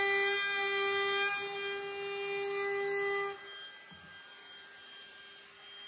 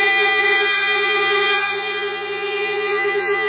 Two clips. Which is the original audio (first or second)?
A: first